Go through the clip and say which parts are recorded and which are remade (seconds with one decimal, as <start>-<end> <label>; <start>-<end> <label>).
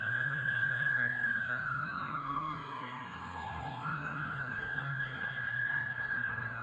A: 0.0-6.6 remade